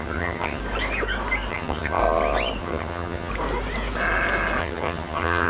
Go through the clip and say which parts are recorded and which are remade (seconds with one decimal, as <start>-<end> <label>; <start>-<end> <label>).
0.0-0.6 remade; 0.6-1.5 recorded; 1.5-2.0 remade; 2.0-2.6 recorded; 2.6-3.3 remade; 3.3-4.6 recorded; 4.6-5.5 remade